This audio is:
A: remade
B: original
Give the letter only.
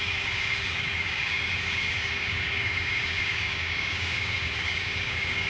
A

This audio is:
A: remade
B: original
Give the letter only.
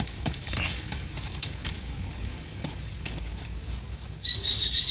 A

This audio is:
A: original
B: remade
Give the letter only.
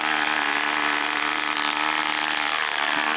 A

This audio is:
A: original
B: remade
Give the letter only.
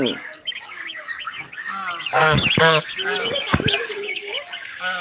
B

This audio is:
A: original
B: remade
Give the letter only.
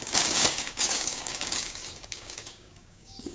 B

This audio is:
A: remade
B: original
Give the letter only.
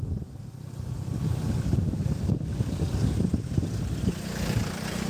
B